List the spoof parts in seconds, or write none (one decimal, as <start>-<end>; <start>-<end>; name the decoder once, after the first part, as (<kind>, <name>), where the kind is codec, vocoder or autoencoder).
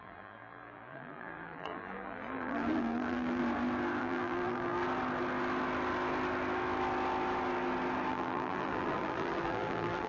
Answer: 0.0-3.4 (vocoder, BigVGAN v2); 4.0-4.8; 8.1-10.1